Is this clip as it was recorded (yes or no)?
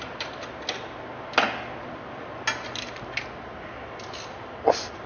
yes